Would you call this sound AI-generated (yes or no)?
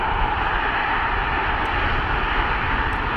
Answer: no